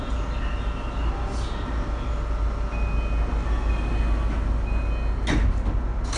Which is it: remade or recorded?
recorded